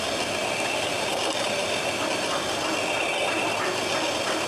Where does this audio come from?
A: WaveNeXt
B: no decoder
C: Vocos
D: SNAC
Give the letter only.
B